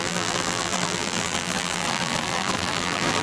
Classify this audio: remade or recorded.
remade